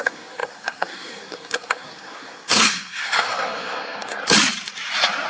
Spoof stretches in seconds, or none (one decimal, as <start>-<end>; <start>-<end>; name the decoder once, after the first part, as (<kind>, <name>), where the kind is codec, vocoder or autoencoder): 0.0-4.2 (codec, SNAC)